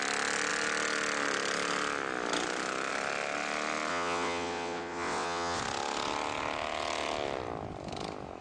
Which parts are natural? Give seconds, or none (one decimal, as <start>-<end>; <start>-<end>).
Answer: 0.0-3.9; 5.6-8.4